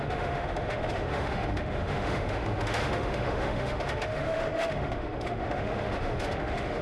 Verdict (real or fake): fake